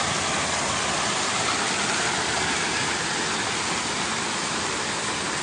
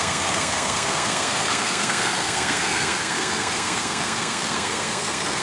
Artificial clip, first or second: second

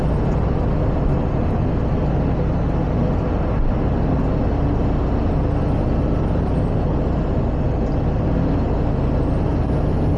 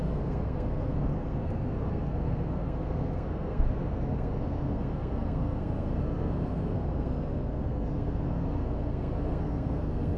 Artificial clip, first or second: second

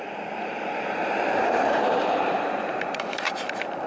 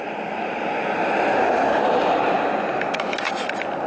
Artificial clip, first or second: first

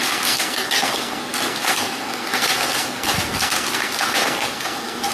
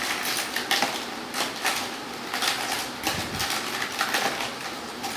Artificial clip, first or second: first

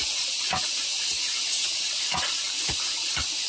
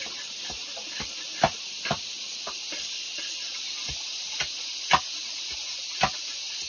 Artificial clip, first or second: first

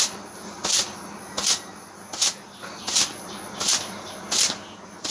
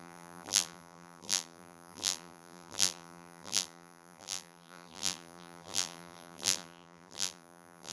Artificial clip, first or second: second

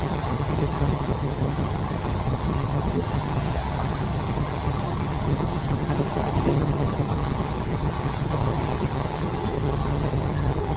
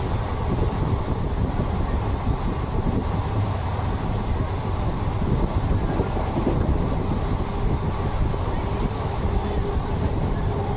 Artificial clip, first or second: first